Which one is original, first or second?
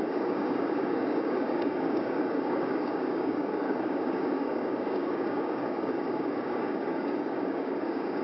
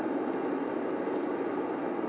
second